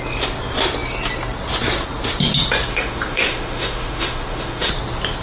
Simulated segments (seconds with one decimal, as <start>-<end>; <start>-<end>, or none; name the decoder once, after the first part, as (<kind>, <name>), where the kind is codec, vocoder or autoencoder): 2.7-4.7 (autoencoder, DAC-VAE)